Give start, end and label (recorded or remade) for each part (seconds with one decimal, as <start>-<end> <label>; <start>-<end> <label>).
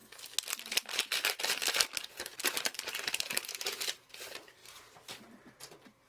0.0-2.0 recorded; 2.0-4.1 remade; 4.1-4.6 recorded; 4.6-6.1 remade